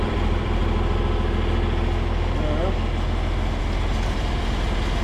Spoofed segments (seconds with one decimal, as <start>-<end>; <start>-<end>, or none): 0.0-0.6; 3.6-5.0